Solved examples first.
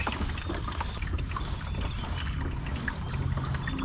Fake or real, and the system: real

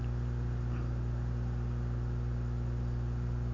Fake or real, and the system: real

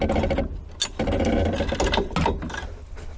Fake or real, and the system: real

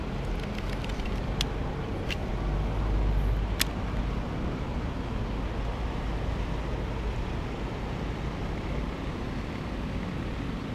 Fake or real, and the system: real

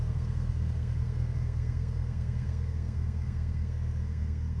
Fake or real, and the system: fake, codec, SNAC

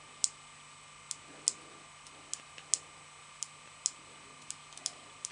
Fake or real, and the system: real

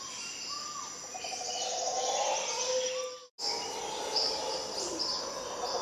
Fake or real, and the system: real